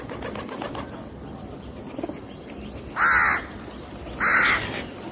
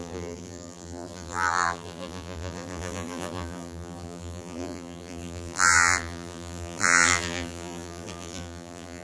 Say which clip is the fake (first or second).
second